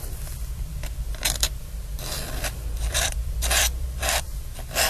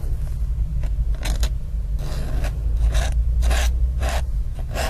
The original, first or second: second